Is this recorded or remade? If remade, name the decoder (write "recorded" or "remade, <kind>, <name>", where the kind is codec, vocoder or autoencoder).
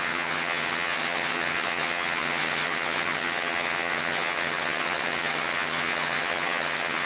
remade, vocoder, HiFi-GAN